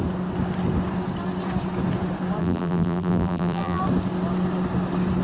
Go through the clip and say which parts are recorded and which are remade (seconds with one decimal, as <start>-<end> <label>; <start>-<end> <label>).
0.0-2.4 recorded; 2.4-3.8 remade; 3.8-5.2 recorded